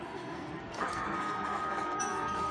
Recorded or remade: remade